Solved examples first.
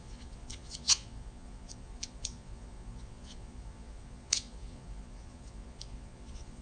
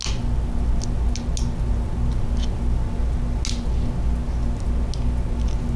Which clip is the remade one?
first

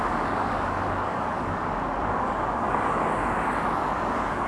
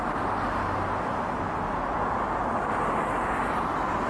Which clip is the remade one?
first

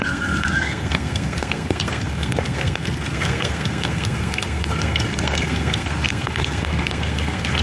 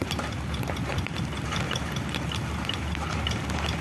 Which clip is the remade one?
first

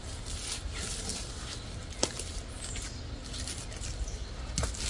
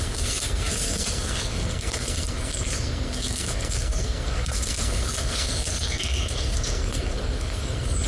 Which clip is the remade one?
second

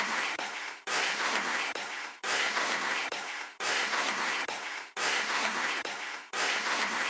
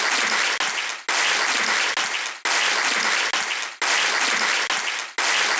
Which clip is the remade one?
first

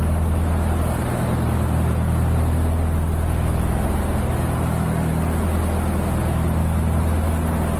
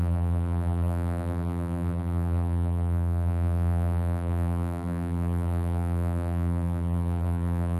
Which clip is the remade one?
second